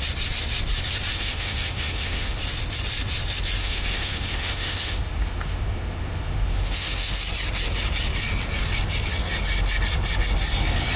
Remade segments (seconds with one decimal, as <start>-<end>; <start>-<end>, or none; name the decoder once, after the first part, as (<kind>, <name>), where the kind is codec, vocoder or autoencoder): 1.1-2.4 (autoencoder, DAC-VAE); 3.6-7.2